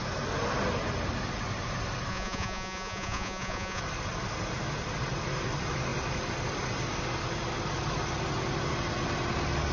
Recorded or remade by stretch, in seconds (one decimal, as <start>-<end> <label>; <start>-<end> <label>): 0.0-2.1 recorded; 2.1-3.8 remade; 3.8-9.7 recorded